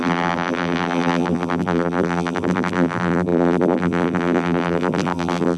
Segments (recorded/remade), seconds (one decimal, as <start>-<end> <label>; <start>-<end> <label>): 0.0-5.6 remade